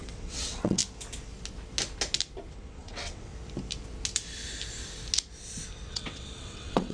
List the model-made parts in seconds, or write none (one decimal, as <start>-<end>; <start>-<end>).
0.0-0.8; 2.5-3.3; 5.9-6.9